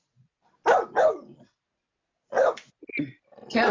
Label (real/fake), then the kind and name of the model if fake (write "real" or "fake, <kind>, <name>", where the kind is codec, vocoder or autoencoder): real